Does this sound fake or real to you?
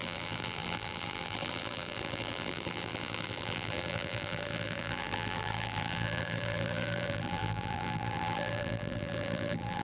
fake